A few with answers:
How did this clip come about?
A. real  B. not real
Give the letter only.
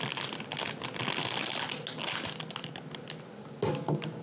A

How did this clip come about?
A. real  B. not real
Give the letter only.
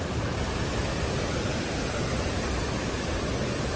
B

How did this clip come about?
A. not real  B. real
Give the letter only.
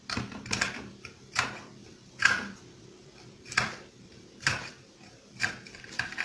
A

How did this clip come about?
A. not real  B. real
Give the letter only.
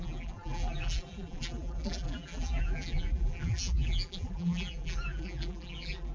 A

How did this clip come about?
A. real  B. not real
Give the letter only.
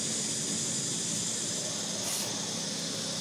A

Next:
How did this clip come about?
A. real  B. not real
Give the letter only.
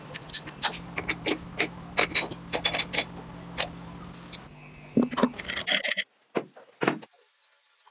A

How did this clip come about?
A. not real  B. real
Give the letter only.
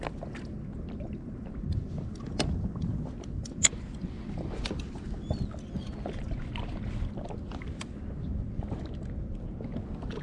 B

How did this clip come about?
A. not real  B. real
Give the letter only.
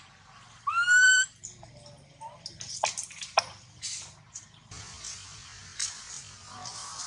B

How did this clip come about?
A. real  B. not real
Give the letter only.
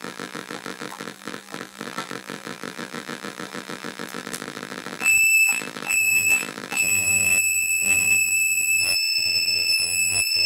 B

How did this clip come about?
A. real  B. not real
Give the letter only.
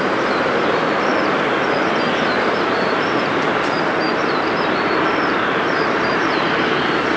B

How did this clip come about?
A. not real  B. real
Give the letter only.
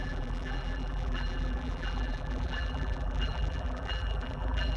A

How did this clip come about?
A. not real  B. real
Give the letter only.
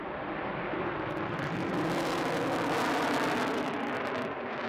B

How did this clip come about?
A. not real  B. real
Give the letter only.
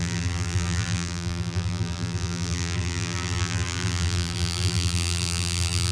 A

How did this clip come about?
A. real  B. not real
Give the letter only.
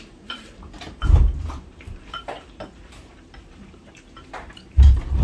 B